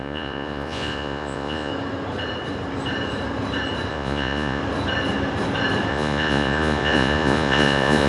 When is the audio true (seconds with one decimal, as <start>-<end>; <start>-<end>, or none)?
1.7-3.9; 4.6-5.9

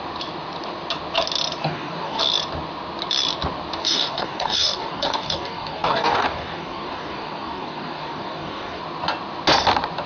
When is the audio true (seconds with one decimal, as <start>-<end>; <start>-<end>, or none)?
0.0-1.6; 2.2-3.8; 8.8-10.1

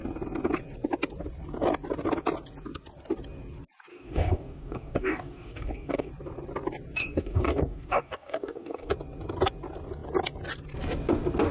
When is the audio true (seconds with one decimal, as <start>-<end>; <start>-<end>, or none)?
0.0-3.9; 6.1-7.0; 8.9-11.5

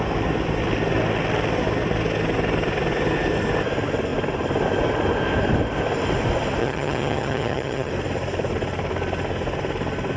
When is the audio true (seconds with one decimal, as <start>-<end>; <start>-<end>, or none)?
0.0-6.6; 7.9-10.2